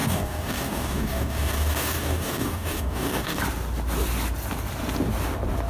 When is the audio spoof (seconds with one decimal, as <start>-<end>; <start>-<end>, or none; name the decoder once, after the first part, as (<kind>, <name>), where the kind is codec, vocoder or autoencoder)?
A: 0.0-3.4 (codec, DAC)